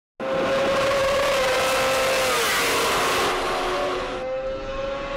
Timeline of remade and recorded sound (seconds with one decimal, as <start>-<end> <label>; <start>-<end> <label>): 0.0-5.2 recorded